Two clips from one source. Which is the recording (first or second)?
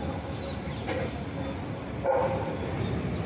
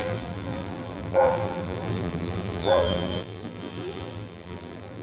first